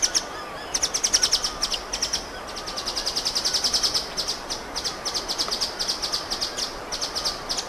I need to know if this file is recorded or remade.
recorded